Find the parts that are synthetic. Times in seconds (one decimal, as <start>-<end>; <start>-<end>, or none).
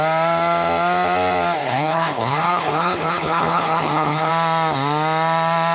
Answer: 1.6-4.3